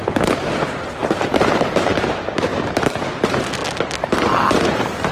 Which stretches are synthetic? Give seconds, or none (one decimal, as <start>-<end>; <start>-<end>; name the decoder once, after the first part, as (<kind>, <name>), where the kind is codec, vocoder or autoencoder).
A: 0.0-3.6 (vocoder, BigVGAN v2); 4.5-5.1